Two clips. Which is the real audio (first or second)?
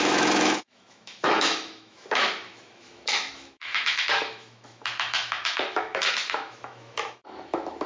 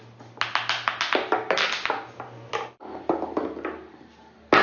second